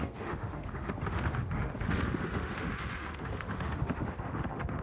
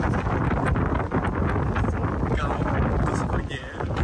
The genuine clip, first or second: second